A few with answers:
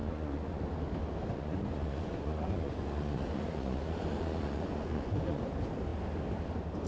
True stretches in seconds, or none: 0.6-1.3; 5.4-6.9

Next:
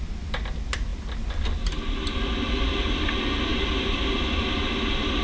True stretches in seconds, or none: 0.0-5.2

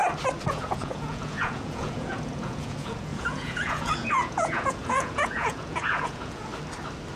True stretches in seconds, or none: 0.0-0.5; 6.5-7.2

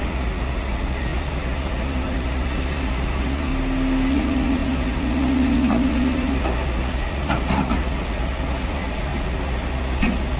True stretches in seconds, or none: 3.5-4.1

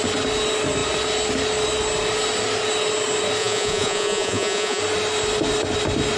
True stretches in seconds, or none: 0.0-3.4; 4.8-6.2

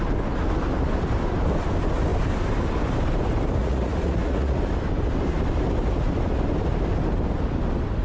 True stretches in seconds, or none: 0.0-3.6; 4.6-8.0